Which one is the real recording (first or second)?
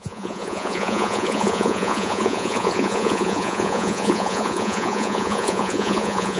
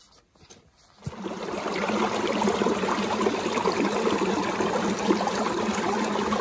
second